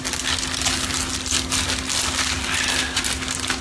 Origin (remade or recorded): recorded